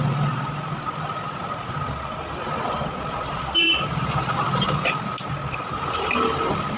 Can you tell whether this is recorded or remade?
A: recorded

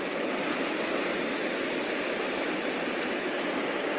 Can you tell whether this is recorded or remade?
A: recorded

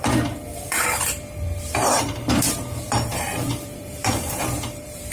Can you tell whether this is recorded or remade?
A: remade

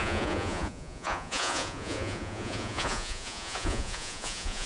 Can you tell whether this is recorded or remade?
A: remade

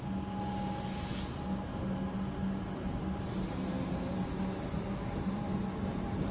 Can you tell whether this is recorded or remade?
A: recorded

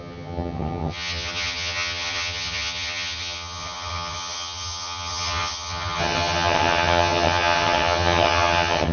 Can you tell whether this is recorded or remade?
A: remade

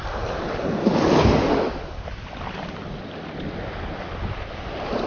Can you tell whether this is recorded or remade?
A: recorded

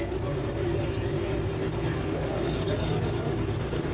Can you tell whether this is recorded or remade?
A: remade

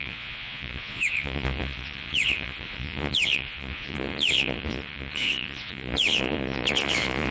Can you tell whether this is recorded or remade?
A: remade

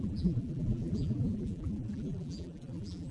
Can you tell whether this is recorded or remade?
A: remade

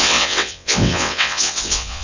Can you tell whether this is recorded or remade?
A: remade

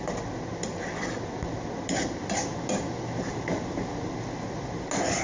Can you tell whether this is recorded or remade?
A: recorded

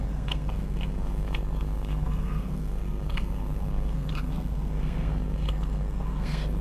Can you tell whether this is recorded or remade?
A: remade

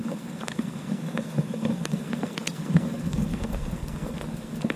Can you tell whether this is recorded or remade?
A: remade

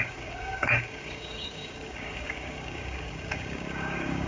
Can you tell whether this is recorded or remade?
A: remade